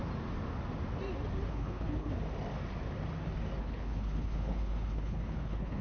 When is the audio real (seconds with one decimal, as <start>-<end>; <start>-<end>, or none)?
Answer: 0.0-1.5; 2.1-3.6